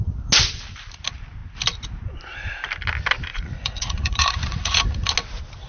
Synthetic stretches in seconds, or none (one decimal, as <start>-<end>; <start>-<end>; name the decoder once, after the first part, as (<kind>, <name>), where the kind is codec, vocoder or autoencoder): 3.3-4.8 (vocoder, Vocos)